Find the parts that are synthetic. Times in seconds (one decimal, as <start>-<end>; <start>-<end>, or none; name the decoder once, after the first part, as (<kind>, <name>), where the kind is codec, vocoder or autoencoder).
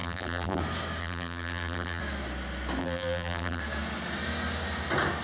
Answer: 0.0-0.6 (vocoder, BigVGAN v2); 1.0-2.0; 2.8-3.6